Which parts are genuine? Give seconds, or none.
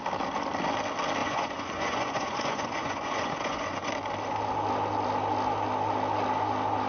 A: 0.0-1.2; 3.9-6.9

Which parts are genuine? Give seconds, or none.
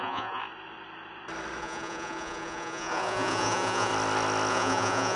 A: 0.4-1.6; 3.9-4.5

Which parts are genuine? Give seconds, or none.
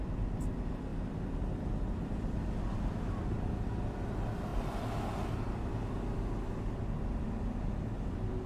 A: 0.0-8.5